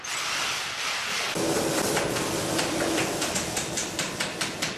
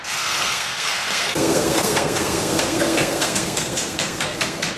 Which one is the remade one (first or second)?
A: second